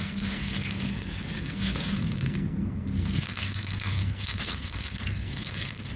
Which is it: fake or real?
fake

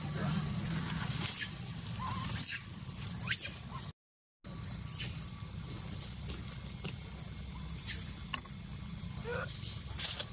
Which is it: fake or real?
real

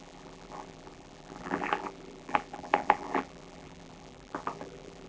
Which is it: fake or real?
fake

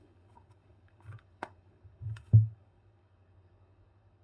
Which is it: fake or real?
fake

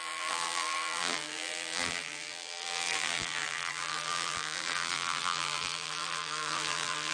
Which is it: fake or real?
fake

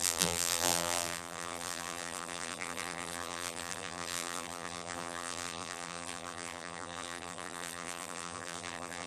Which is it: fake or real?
fake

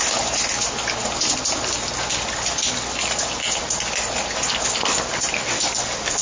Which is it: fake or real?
real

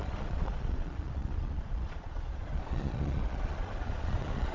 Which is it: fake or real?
fake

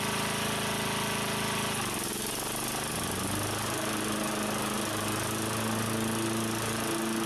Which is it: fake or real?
real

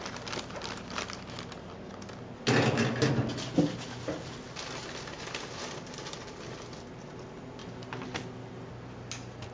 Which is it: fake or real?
real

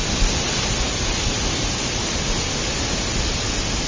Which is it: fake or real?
real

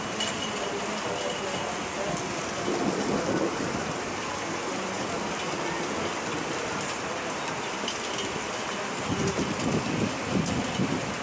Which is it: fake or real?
real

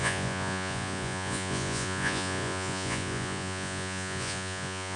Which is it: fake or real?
fake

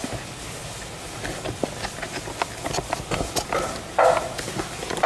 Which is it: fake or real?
real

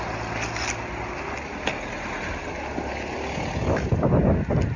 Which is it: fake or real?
real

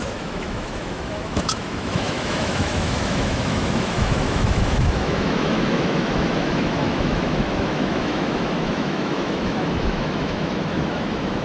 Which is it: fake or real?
fake